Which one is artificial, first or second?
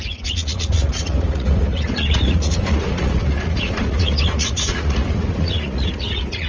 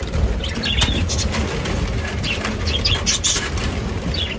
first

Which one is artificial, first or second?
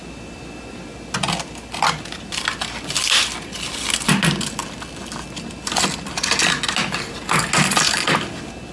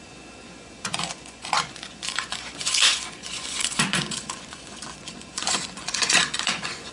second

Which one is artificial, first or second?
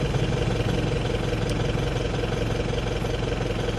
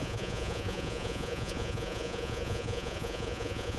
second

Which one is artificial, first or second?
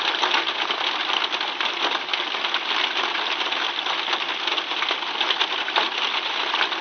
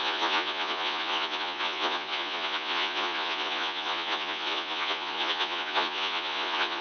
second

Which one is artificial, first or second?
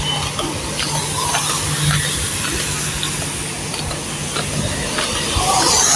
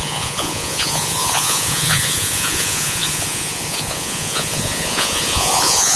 second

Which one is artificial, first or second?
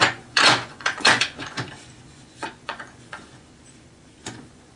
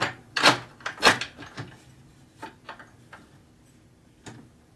first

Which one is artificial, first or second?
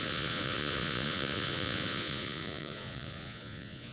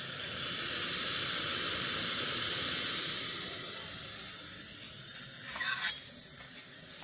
first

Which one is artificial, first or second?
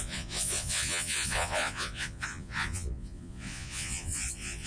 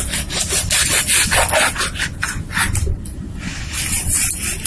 first